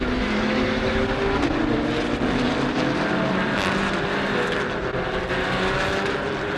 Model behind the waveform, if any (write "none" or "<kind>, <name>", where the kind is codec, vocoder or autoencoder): none